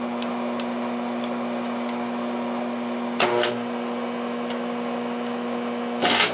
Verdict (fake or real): real